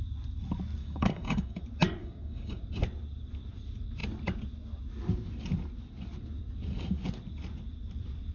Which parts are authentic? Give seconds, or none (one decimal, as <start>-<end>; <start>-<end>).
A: 0.0-0.8; 1.6-2.0; 2.6-8.3